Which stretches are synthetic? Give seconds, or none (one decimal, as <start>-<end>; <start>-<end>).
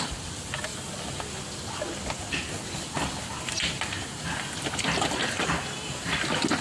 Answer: none